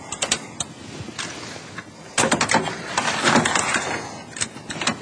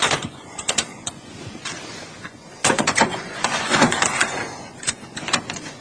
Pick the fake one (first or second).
second